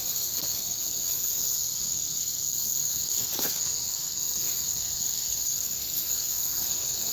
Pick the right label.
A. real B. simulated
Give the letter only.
B